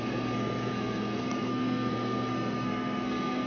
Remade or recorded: remade